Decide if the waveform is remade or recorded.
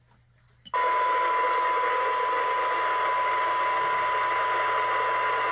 recorded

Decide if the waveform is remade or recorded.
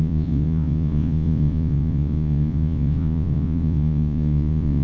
remade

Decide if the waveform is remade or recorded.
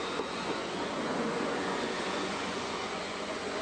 remade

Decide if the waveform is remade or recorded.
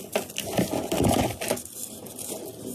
recorded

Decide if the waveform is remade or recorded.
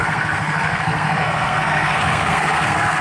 remade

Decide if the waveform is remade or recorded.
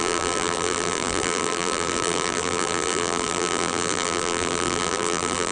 remade